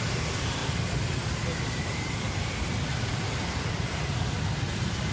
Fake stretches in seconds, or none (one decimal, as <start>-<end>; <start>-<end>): none